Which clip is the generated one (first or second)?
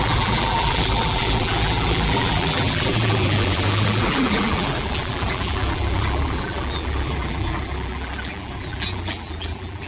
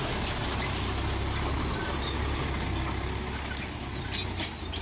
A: first